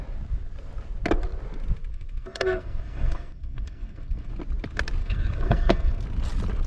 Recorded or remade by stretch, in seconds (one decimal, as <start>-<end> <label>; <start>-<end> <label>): 0.0-1.9 recorded; 1.9-4.3 remade; 4.3-5.0 recorded; 5.0-6.0 remade; 6.0-6.7 recorded

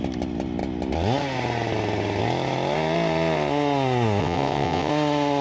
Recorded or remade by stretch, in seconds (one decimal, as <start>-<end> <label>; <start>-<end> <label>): 0.0-4.2 recorded; 4.2-4.9 remade; 4.9-5.4 recorded

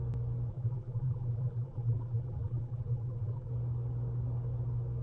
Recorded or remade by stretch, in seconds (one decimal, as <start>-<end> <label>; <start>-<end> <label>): 0.0-0.5 recorded; 0.5-3.5 remade; 3.5-5.0 recorded

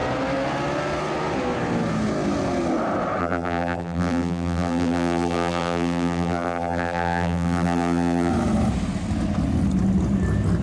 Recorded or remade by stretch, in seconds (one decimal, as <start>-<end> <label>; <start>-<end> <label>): 0.0-3.2 recorded; 3.2-8.3 remade; 8.3-10.6 recorded

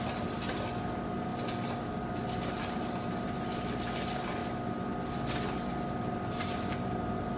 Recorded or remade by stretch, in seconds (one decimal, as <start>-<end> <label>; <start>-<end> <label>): 0.0-7.4 recorded

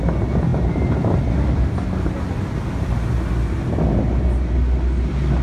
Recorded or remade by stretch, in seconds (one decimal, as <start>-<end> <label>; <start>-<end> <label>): 0.0-5.4 recorded

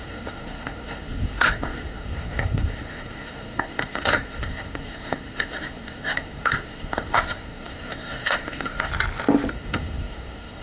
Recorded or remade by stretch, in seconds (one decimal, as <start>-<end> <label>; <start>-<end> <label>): 0.0-8.9 remade; 8.9-9.5 recorded; 9.5-10.6 remade